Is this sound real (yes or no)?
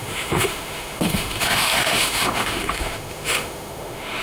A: no